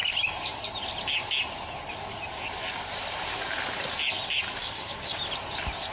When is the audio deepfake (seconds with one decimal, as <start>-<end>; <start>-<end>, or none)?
4.6-5.2